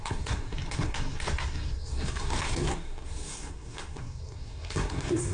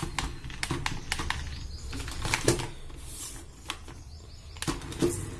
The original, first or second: second